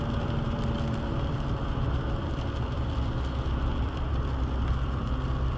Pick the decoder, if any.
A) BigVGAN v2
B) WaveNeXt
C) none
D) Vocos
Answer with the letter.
A